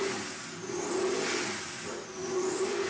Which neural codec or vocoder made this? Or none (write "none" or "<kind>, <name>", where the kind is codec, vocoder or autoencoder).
none